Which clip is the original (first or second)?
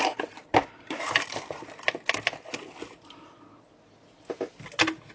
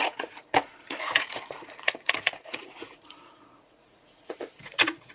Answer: first